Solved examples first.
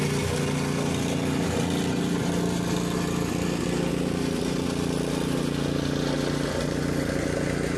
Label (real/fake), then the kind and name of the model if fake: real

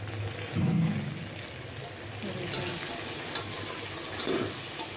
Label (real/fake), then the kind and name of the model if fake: real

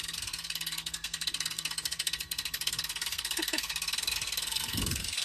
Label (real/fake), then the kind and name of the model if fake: fake, codec, SNAC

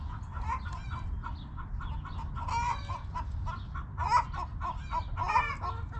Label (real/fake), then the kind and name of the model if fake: real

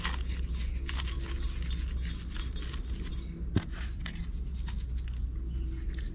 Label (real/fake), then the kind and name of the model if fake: real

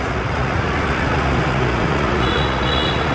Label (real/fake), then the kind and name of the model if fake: fake, vocoder, Vocos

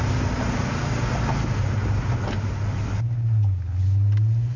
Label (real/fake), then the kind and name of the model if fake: real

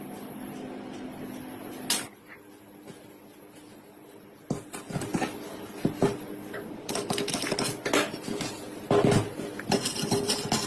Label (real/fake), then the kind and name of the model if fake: real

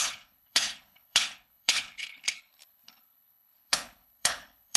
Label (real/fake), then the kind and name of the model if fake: fake, codec, HILCodec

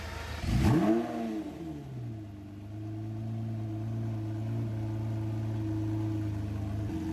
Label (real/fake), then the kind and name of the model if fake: real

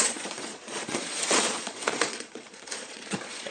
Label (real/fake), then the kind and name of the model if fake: fake, vocoder, Vocos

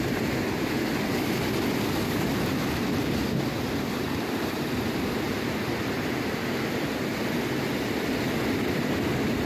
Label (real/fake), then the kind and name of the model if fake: real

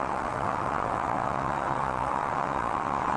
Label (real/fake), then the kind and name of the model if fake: fake, vocoder, WaveNeXt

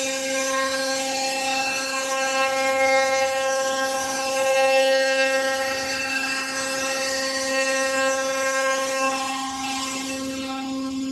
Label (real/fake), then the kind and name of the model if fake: fake, codec, HILCodec